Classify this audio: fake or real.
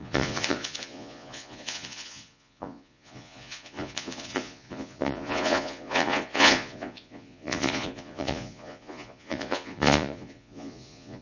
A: fake